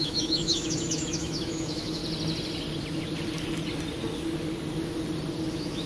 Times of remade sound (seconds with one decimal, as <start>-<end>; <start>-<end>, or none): 0.0-2.0; 5.5-5.9